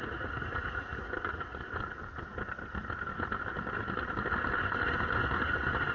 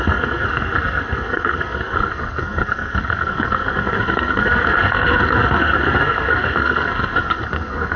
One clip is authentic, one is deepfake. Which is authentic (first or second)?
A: first